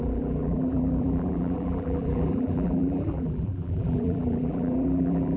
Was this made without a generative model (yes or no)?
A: no